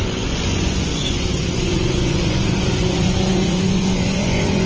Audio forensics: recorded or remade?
remade